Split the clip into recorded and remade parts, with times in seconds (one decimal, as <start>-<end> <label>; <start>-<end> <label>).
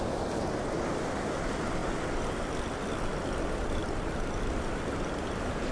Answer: 0.0-3.8 recorded; 3.8-4.4 remade; 4.4-5.7 recorded